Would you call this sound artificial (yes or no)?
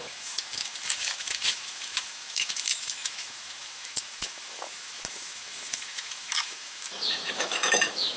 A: yes